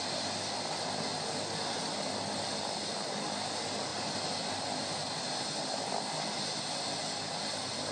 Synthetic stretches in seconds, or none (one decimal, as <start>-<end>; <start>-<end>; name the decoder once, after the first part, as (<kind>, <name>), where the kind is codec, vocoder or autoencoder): none